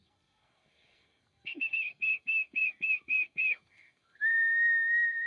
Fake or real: fake